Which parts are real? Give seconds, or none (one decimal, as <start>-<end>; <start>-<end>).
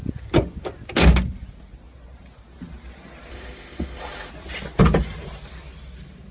0.0-3.3; 4.3-6.3